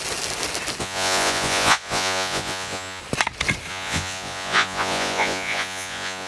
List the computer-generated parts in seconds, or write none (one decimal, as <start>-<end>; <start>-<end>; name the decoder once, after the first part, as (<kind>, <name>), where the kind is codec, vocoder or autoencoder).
0.8-3.0 (vocoder, Vocos); 3.7-6.3